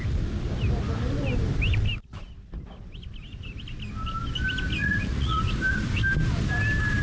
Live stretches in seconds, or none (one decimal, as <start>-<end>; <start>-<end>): 0.0-4.8; 5.4-7.0